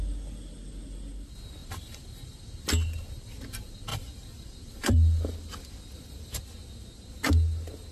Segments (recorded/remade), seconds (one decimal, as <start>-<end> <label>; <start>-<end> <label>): 0.0-3.9 recorded; 3.9-6.4 remade; 6.4-7.9 recorded